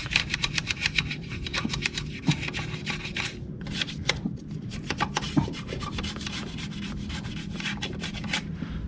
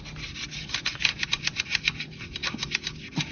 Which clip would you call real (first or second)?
second